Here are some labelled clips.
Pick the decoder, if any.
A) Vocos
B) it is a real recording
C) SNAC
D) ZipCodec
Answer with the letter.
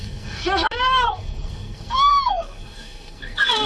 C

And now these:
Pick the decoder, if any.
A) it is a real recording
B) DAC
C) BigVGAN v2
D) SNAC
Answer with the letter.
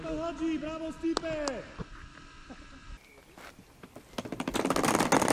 A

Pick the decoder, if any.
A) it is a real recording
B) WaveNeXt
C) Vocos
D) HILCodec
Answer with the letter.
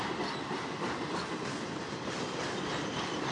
A